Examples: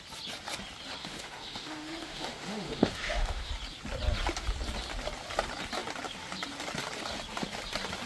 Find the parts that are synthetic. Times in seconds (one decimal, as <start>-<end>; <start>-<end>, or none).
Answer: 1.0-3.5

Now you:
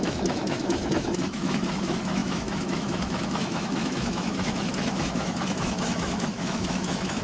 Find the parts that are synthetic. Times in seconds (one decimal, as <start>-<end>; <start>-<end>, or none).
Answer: 0.0-7.2

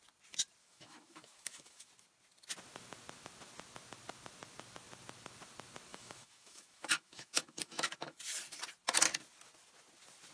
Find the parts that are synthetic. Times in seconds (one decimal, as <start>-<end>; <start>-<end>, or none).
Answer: 0.6-1.9; 5.9-8.2

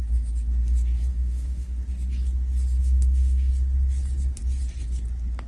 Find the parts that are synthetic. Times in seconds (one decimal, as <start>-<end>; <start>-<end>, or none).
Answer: 1.1-1.7; 2.8-3.5

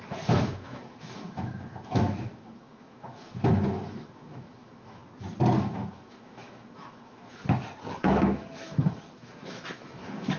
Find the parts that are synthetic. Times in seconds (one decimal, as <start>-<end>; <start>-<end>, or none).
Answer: 0.0-5.0; 5.6-7.4; 7.9-10.4

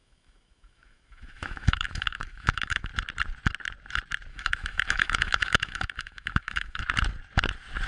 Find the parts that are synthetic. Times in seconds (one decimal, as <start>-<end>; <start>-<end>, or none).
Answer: 0.0-2.9; 4.3-6.8

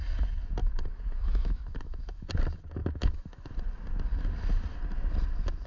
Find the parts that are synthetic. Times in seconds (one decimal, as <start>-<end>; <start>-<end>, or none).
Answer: 0.6-2.3; 2.8-3.5

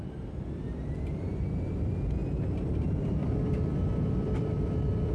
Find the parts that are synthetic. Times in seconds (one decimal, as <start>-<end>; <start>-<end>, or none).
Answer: none